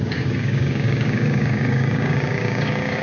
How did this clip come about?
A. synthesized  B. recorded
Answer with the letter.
A